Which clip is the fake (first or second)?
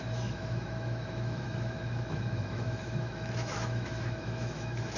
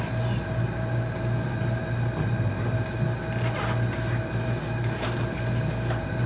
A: first